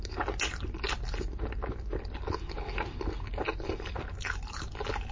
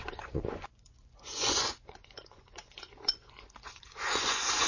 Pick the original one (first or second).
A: first